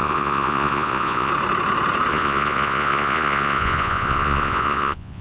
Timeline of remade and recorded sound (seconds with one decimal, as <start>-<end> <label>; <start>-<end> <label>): 0.0-1.3 remade; 1.3-2.1 recorded; 2.1-5.2 remade